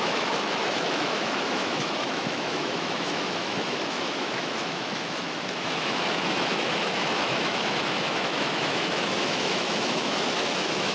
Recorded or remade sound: remade